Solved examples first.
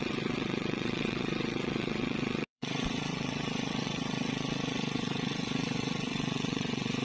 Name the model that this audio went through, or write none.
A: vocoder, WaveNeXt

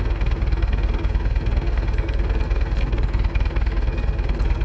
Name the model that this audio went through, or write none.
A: codec, SNAC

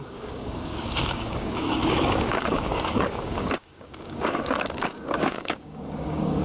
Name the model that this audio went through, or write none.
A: codec, DAC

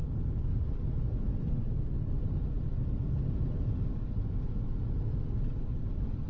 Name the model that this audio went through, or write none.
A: none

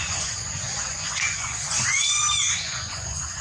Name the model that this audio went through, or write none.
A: vocoder, Vocos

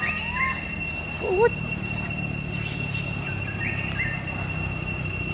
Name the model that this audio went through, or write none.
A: none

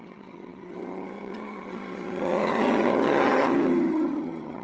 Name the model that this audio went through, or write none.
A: vocoder, HiFi-GAN